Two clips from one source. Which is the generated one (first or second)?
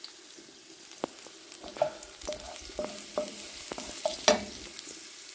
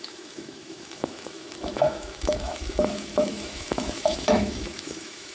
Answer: second